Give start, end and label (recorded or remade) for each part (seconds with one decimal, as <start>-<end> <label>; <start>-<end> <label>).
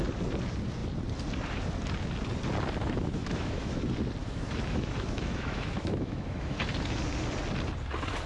0.0-2.8 recorded; 2.8-3.8 remade; 3.8-4.2 recorded; 4.2-6.6 remade; 6.6-8.3 recorded